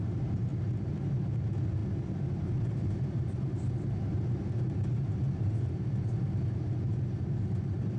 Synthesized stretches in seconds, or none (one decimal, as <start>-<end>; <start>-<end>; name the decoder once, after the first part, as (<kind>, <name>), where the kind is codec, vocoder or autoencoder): 0.0-1.8 (vocoder, BigVGAN v2); 2.6-8.0